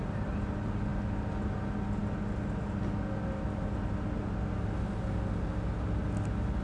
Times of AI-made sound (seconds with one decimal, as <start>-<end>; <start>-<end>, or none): none

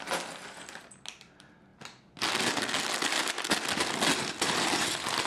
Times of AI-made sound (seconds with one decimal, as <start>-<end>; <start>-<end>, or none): none

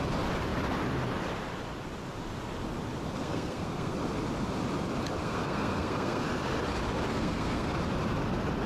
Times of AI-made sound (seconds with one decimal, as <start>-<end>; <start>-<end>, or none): 3.2-4.0; 5.2-6.2; 7.1-7.7

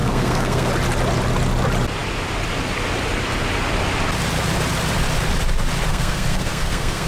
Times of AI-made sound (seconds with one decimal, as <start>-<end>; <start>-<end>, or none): 0.0-0.7; 5.9-7.1

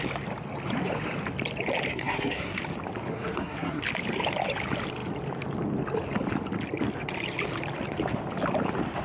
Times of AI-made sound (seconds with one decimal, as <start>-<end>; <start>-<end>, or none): 1.9-2.6; 3.1-3.8

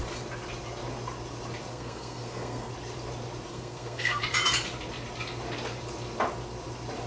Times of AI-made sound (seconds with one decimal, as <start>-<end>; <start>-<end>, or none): 1.7-2.7; 3.5-4.2

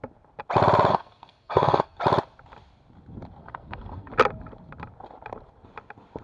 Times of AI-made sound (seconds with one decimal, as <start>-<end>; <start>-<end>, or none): 0.9-2.0; 3.4-4.1

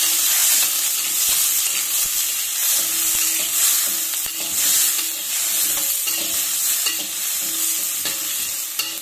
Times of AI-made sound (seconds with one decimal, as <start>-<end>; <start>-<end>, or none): none